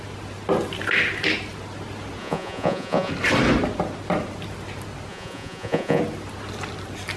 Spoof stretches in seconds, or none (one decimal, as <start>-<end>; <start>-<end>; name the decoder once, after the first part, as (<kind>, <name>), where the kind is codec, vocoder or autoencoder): 2.2-3.1 (vocoder, Vocos); 5.1-6.0